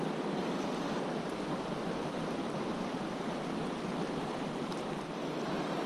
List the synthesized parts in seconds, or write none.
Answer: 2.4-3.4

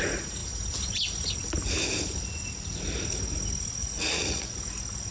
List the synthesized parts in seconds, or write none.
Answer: 3.8-4.5

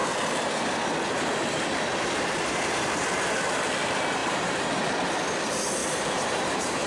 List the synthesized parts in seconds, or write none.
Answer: 4.2-4.9; 5.8-6.9